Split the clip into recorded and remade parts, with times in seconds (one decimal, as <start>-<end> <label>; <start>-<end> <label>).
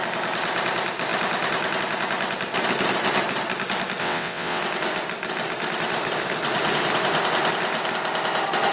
0.0-4.0 recorded; 4.0-4.6 remade; 4.6-8.7 recorded